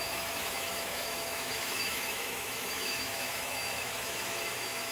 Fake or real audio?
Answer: fake